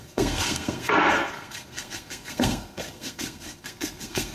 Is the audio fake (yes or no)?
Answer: yes